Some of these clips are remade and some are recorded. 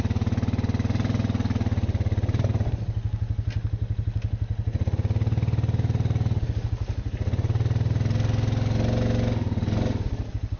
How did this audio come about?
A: recorded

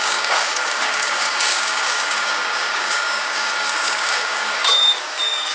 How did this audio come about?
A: remade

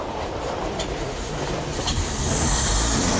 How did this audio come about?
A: recorded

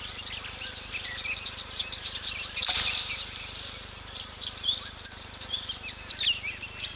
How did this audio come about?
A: recorded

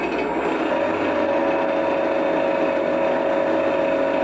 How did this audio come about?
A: recorded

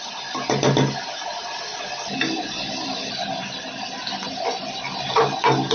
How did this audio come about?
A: recorded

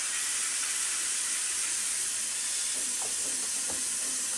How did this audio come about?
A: remade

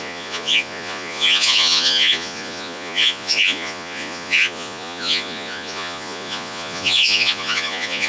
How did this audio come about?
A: remade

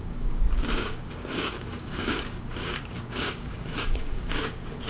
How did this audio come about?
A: remade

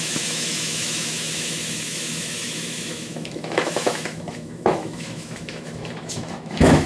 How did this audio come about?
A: remade